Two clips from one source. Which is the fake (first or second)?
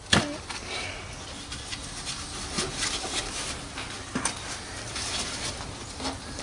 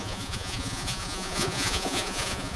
second